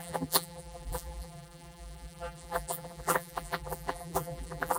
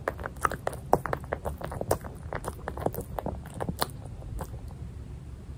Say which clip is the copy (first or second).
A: first